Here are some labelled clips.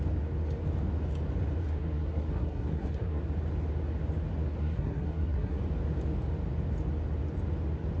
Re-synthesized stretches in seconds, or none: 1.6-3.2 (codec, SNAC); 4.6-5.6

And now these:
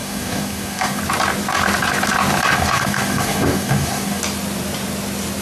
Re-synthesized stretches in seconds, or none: 0.0-1.0 (codec, DAC); 2.5-4.2

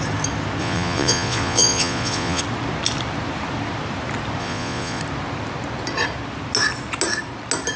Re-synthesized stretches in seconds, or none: 0.6-2.4 (vocoder, Vocos); 4.4-5.0